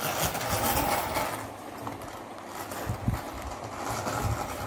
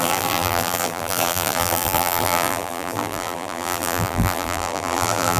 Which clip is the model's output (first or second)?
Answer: second